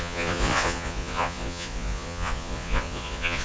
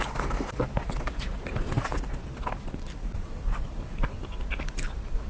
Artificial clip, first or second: first